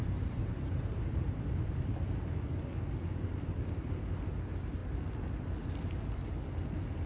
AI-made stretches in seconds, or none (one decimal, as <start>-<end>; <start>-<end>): 0.0-1.9